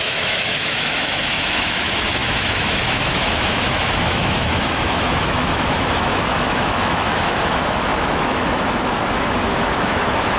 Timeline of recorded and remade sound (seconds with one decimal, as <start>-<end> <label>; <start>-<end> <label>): 0.0-10.4 remade